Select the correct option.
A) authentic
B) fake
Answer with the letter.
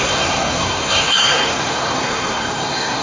B